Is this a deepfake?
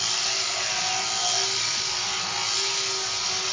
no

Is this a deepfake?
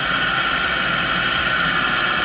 no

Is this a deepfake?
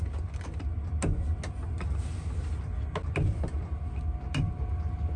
no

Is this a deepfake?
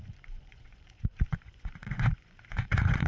yes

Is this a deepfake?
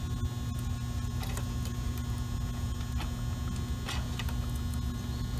no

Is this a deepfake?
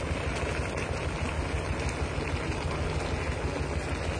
no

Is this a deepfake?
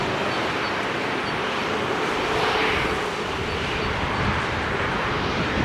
yes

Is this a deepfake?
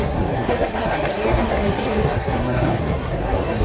yes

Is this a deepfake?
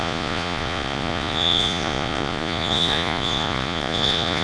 yes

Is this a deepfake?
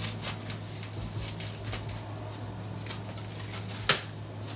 no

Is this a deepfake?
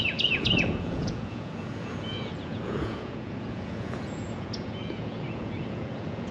yes